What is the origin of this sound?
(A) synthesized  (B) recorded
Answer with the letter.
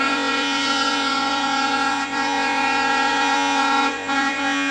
A